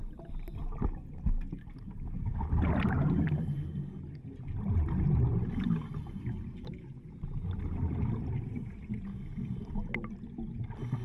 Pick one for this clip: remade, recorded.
recorded